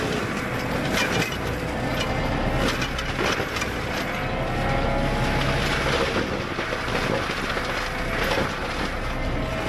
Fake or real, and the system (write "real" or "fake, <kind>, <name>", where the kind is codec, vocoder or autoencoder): real